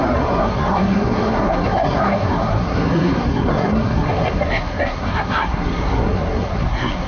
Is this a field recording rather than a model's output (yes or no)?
no